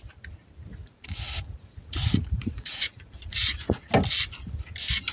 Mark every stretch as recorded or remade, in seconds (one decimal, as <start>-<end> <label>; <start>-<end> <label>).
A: 0.0-0.8 recorded; 0.8-3.9 remade; 3.9-5.1 recorded